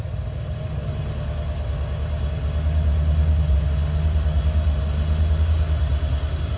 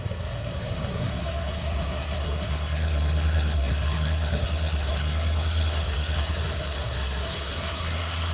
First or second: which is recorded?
first